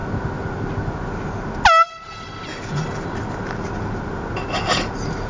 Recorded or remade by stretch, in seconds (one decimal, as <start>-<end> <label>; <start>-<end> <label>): 0.0-5.3 recorded